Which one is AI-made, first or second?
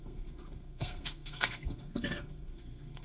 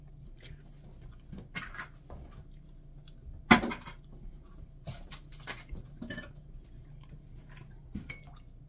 first